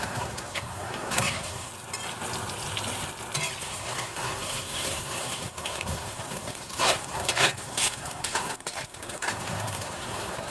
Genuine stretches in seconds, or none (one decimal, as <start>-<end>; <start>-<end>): 1.7-3.6